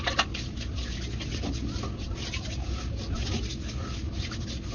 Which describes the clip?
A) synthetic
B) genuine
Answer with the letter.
B